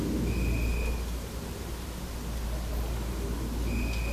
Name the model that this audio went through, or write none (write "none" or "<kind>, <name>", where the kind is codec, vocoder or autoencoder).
none